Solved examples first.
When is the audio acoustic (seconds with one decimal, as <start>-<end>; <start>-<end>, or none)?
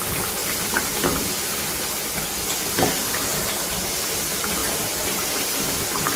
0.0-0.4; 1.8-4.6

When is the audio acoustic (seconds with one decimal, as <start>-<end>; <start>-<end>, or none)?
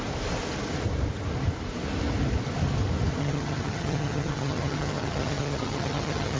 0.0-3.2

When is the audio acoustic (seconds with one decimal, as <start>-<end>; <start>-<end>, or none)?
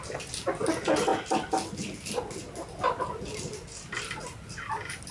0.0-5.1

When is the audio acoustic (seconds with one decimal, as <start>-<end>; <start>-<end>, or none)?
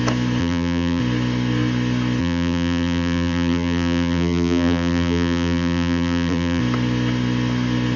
0.0-0.4; 1.0-2.2; 6.6-8.0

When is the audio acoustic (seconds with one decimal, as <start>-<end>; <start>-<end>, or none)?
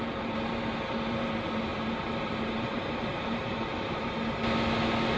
0.0-1.7; 4.1-5.2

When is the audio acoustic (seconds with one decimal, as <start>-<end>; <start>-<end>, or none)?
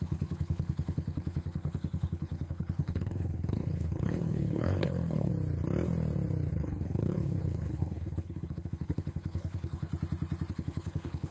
5.3-6.5; 9.9-10.5